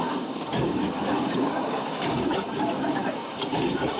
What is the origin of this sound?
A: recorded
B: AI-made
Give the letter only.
B